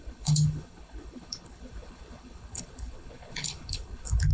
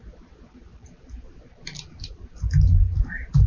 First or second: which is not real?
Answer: first